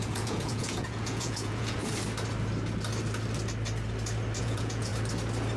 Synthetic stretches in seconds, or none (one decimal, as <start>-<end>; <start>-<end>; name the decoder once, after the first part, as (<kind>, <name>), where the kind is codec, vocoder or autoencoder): 0.0-1.8 (vocoder, Vocos); 4.4-4.9